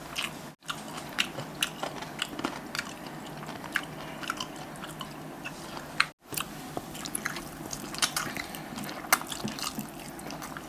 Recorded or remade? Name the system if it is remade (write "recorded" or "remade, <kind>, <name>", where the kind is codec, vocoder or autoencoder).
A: recorded